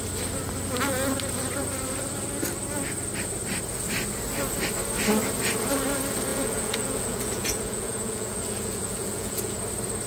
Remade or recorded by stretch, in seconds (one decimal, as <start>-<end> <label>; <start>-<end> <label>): 0.0-6.3 recorded; 6.3-9.6 remade; 9.6-10.1 recorded